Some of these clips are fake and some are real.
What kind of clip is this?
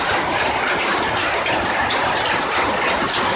real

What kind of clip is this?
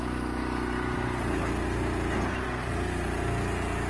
real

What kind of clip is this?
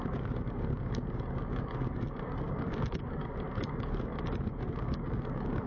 fake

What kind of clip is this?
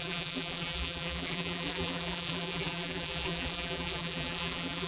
fake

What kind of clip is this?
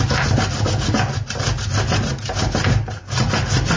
real